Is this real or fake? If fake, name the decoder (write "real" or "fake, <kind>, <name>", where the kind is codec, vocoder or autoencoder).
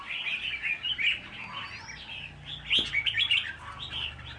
real